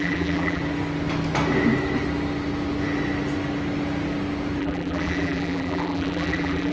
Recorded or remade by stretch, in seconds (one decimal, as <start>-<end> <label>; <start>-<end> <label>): 0.0-0.6 remade; 0.6-4.6 recorded; 4.6-6.7 remade